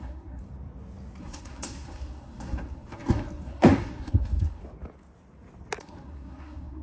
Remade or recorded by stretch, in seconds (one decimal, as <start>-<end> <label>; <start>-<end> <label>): 0.0-0.4 remade; 0.4-1.2 recorded; 1.2-4.6 remade; 4.6-5.8 recorded; 5.8-6.8 remade